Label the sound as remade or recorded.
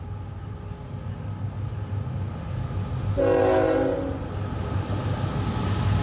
recorded